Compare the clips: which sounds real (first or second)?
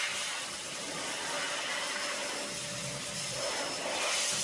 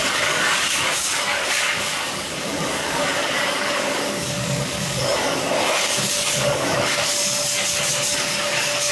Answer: first